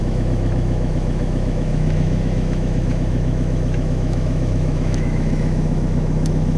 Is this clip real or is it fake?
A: fake